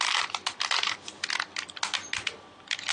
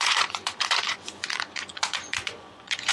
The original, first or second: first